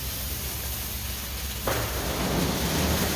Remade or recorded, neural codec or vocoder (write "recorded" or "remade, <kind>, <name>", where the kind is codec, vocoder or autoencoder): recorded